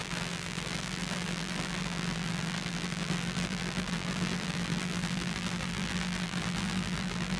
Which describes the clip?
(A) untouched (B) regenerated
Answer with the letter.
B